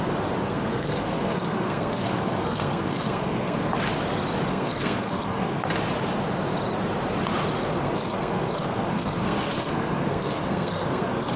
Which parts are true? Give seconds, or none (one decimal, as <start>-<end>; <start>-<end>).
0.0-0.4; 3.7-4.5; 5.7-7.7